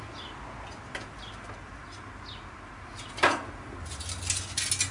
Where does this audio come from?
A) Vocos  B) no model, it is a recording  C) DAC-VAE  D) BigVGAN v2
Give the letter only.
B